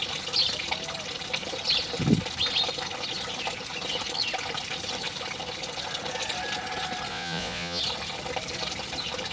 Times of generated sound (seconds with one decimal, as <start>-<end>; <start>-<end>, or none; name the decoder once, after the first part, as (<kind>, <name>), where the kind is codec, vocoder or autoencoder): 7.1-7.8 (vocoder, Vocos)